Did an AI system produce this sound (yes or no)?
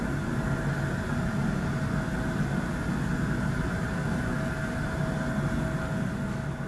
no